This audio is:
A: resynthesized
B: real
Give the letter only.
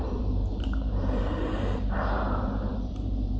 A